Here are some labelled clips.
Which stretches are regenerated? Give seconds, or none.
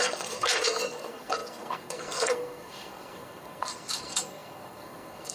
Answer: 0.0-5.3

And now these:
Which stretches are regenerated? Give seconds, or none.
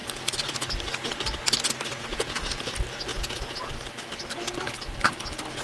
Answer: 2.1-2.7; 3.1-3.7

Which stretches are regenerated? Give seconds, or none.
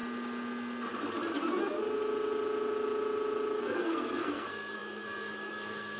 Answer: 3.6-6.0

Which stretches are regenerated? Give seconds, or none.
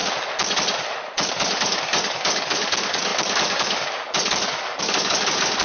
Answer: 1.3-5.6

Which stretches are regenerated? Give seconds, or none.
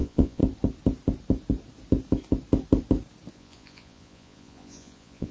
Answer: 0.0-0.4; 3.3-5.3